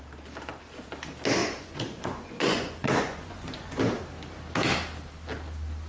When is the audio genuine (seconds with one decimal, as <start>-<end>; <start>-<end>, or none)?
0.0-1.4; 3.8-5.9